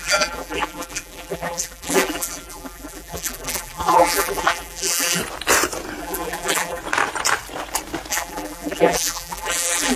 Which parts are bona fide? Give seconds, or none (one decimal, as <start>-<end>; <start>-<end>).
5.2-6.0; 6.8-8.1